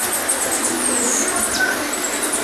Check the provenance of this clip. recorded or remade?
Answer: recorded